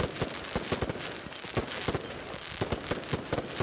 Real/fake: real